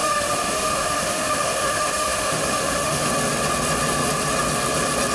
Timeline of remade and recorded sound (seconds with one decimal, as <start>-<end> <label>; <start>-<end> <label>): 0.0-3.1 remade; 3.1-5.1 recorded